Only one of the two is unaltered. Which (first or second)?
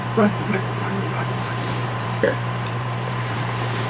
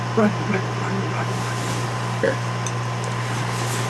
second